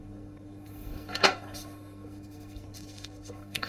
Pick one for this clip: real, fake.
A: fake